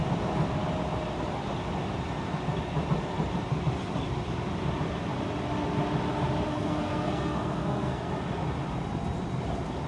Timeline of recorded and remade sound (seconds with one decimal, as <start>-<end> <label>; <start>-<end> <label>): 0.0-6.5 recorded; 6.5-8.1 remade; 8.1-9.9 recorded